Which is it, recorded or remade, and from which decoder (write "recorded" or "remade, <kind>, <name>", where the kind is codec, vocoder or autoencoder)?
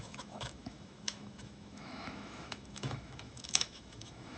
remade, autoencoder, DAC-VAE